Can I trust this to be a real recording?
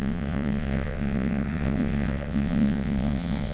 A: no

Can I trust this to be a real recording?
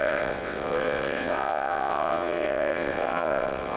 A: no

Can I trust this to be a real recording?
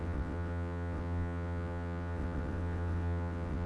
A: no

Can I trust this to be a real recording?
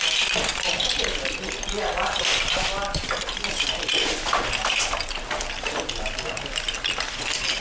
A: yes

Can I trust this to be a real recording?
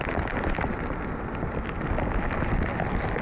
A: yes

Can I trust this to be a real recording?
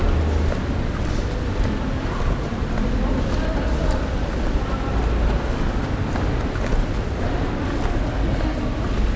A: yes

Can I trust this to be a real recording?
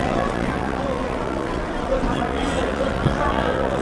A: no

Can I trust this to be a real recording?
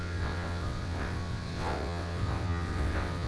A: no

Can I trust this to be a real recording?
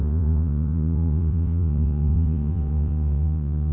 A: no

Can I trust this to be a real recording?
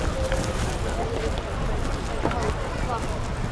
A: yes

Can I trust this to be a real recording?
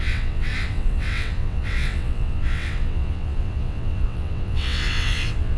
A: no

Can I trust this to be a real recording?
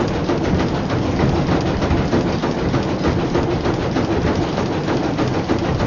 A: yes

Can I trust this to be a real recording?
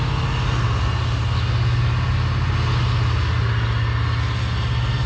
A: yes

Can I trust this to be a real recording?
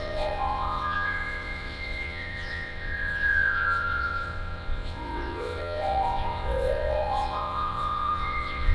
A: no